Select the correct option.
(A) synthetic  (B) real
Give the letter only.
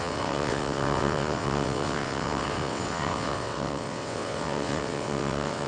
A